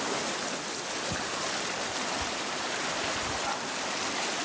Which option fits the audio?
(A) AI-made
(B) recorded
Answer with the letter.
B